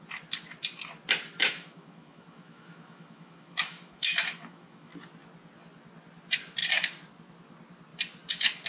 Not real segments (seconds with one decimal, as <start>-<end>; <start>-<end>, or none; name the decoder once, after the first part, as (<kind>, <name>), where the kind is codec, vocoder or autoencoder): 1.4-4.9 (autoencoder, DAC-VAE)